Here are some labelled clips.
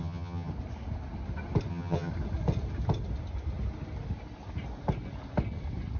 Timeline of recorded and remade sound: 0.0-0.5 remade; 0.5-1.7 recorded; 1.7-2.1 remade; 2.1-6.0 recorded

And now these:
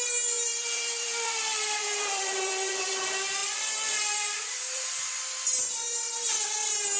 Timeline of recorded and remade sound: 0.0-0.5 recorded; 0.5-2.9 remade; 2.9-3.4 recorded; 3.4-5.2 remade; 5.2-7.0 recorded

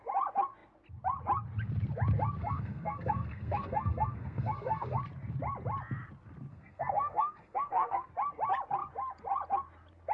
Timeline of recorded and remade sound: 0.0-2.4 recorded; 2.4-5.0 remade; 5.0-6.5 recorded; 6.5-8.1 remade; 8.1-10.1 recorded

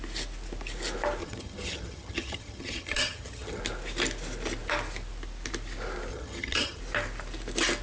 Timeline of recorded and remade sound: 0.0-1.2 recorded; 1.2-3.6 remade; 3.6-6.1 recorded; 6.1-6.8 remade; 6.8-7.8 recorded